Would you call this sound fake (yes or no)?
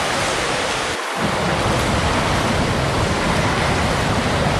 no